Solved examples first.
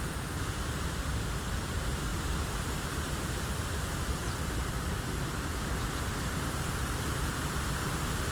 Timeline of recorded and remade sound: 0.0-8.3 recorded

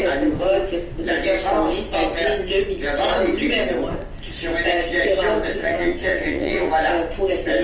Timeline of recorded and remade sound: 0.0-5.6 recorded; 5.6-6.7 remade; 6.7-7.6 recorded

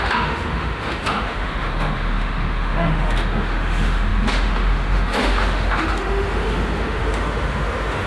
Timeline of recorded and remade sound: 0.0-8.1 remade

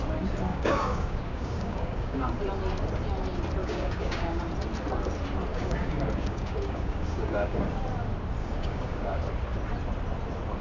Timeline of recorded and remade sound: 0.0-0.5 recorded; 0.5-2.4 remade; 2.4-3.6 recorded; 3.6-4.4 remade; 4.4-5.5 recorded; 5.5-7.7 remade; 7.7-8.4 recorded; 8.4-9.2 remade; 9.2-10.6 recorded

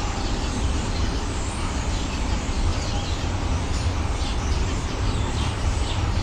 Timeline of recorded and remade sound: 0.0-2.7 remade; 2.7-4.5 recorded; 4.5-6.2 remade

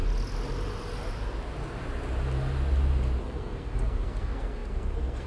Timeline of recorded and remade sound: 0.0-3.2 recorded; 3.2-5.3 remade